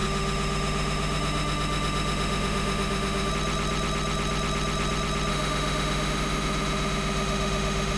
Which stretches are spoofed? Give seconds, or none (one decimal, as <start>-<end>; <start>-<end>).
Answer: 0.0-3.3; 5.3-8.0